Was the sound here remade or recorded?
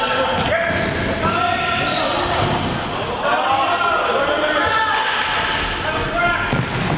recorded